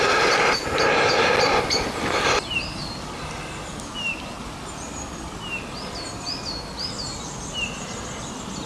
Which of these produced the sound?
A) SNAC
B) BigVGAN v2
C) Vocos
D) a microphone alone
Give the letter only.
D